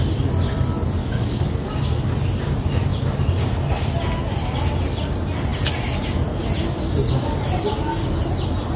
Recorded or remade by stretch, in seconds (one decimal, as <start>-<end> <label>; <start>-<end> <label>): 0.0-1.0 recorded; 1.0-1.7 remade; 1.7-8.8 recorded